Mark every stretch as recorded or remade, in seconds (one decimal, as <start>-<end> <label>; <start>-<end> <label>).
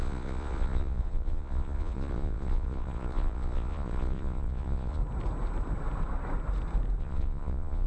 0.0-5.0 remade; 5.0-7.0 recorded; 7.0-7.9 remade